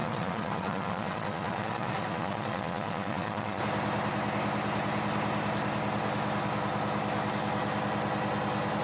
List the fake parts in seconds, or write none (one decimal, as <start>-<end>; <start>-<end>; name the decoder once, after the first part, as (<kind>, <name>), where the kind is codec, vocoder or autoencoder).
0.0-3.6 (vocoder, Vocos)